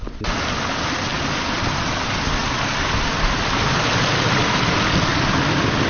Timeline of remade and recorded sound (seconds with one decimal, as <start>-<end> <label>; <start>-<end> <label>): 0.0-5.9 recorded